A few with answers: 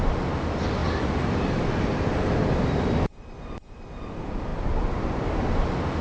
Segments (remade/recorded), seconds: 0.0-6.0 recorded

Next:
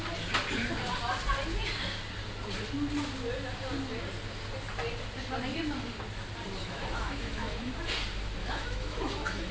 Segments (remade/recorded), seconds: 0.0-6.6 recorded; 6.6-7.7 remade; 7.7-8.4 recorded; 8.4-9.5 remade

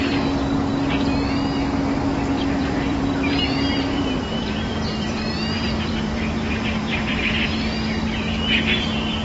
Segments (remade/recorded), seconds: 0.0-2.6 recorded; 2.6-7.3 remade; 7.3-9.2 recorded

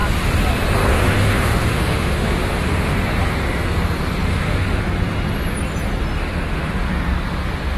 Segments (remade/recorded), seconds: 0.0-0.9 recorded; 0.9-2.9 remade; 2.9-4.3 recorded; 4.3-4.8 remade; 4.8-6.2 recorded; 6.2-6.8 remade; 6.8-7.8 recorded

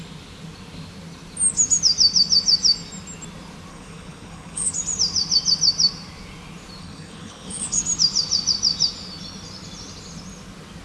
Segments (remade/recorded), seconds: 0.0-3.7 recorded; 3.7-4.7 remade; 4.7-6.8 recorded; 6.8-7.8 remade; 7.8-10.8 recorded